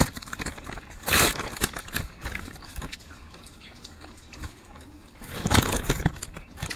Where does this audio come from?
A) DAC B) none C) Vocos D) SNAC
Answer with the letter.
A